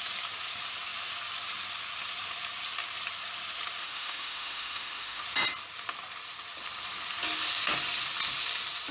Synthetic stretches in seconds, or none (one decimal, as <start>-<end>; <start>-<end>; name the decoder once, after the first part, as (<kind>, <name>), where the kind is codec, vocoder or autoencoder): 3.8-5.2 (autoencoder, DAC-VAE)